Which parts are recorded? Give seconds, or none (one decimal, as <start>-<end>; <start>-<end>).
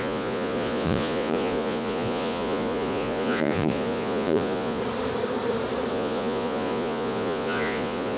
4.8-5.9